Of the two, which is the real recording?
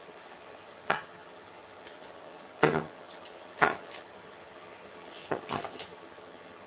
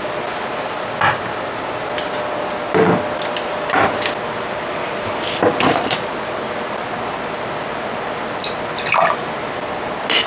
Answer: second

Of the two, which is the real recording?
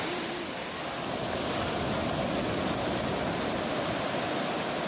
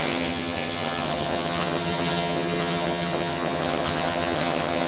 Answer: first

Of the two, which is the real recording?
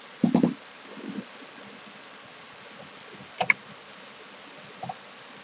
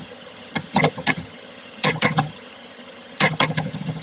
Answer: first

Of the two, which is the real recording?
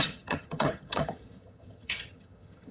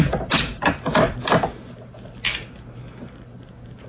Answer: second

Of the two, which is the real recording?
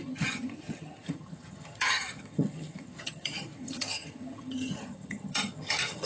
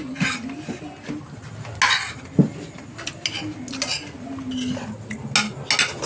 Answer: second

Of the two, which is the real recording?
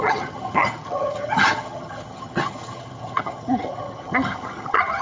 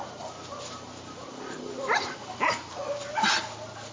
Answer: second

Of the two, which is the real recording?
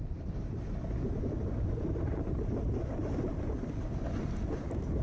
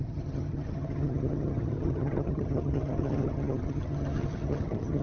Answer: first